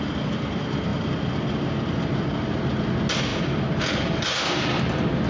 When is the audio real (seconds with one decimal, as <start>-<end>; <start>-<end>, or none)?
0.0-5.3